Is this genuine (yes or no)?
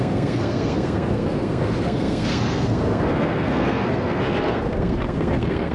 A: no